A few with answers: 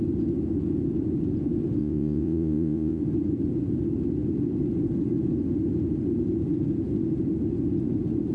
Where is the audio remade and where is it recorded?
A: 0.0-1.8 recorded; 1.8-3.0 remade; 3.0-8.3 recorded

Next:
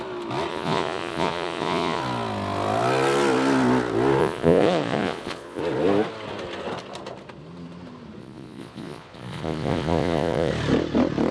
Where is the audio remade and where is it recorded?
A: 0.0-0.5 recorded; 0.5-2.0 remade; 2.0-4.2 recorded; 4.2-5.6 remade; 5.6-8.2 recorded; 8.2-10.5 remade; 10.5-11.3 recorded

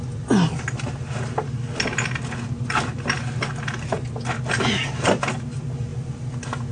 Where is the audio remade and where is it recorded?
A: 0.0-6.7 recorded

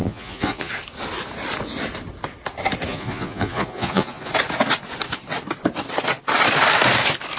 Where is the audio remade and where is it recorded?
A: 0.0-0.7 remade; 0.7-2.9 recorded; 2.9-4.3 remade; 4.3-7.4 recorded